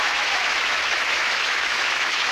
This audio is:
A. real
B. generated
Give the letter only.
B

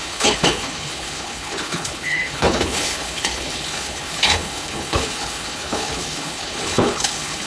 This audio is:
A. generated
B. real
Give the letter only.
A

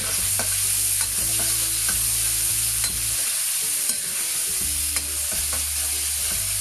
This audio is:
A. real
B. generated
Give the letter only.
A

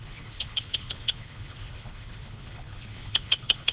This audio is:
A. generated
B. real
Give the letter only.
A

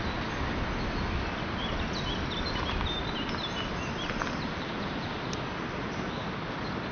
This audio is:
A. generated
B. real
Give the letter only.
B